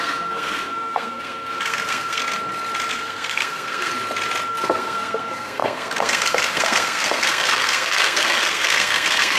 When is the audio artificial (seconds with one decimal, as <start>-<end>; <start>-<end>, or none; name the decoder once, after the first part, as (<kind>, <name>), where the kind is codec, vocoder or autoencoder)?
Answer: 0.0-2.2 (codec, SNAC); 2.9-3.9; 4.5-9.4